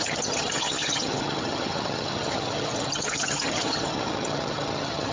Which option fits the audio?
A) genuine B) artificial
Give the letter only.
B